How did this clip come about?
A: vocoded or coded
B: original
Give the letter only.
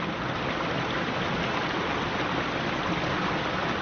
B